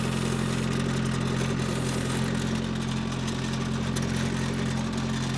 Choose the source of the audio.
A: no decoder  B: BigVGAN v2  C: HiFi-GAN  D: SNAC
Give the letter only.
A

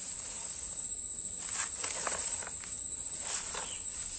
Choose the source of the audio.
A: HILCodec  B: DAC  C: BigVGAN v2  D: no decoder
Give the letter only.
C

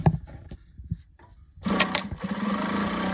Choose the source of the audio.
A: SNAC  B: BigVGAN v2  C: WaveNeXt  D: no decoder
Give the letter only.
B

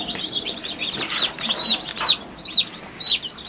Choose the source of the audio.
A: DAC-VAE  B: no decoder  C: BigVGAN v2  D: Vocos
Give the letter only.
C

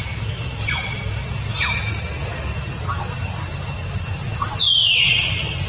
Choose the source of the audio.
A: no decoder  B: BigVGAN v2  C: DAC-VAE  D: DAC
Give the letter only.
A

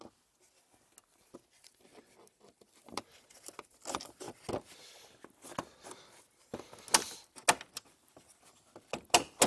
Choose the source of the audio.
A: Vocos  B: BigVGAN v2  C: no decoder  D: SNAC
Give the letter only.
C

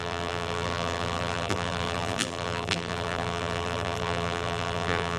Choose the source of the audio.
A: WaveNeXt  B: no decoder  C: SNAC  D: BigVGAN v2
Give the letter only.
D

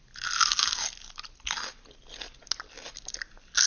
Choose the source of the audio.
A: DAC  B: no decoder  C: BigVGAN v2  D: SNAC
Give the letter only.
B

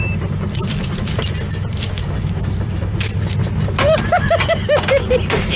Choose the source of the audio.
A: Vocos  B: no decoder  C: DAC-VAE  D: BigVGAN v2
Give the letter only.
D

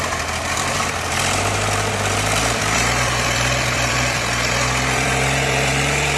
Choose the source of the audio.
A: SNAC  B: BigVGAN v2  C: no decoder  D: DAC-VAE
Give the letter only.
B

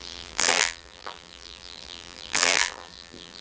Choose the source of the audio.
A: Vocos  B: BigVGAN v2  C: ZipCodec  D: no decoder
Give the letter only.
B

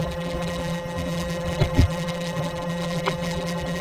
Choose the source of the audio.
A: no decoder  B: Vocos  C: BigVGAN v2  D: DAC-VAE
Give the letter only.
C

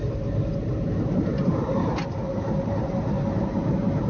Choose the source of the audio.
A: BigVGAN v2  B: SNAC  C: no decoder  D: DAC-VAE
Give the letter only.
A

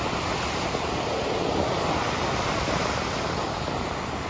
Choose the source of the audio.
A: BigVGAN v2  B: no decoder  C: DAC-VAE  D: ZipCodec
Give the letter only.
B